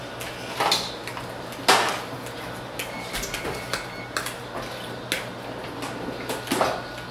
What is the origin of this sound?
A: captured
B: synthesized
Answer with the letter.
A